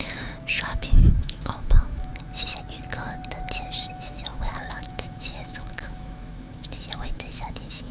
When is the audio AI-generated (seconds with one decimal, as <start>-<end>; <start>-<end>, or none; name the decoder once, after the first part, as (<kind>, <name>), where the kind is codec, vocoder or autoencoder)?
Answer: 0.0-2.1 (autoencoder, DAC-VAE); 3.8-7.9